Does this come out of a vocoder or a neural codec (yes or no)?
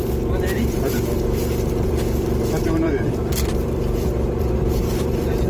yes